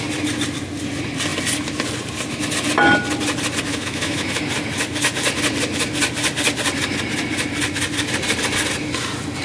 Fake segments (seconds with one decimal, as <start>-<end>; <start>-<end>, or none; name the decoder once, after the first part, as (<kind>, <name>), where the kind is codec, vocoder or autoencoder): 3.7-4.4 (autoencoder, DAC-VAE)